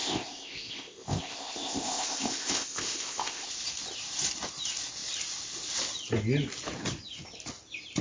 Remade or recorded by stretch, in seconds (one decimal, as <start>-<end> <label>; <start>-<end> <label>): 0.0-3.5 remade; 3.5-8.0 recorded